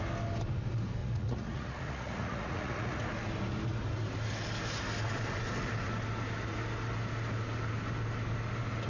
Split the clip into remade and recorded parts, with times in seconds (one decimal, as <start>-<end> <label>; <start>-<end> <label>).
0.0-1.0 recorded; 1.0-3.0 remade; 3.0-8.9 recorded